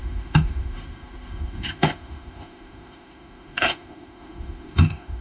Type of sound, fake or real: fake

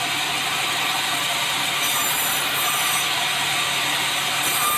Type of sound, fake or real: real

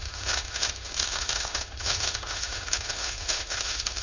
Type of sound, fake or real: fake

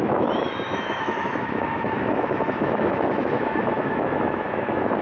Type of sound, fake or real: fake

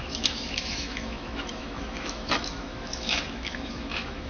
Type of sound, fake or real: fake